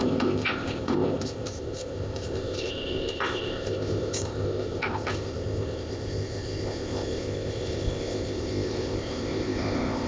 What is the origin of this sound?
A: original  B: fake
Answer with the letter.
B